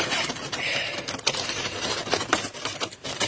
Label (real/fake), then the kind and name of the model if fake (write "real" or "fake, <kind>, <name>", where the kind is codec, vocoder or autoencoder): fake, vocoder, BigVGAN v2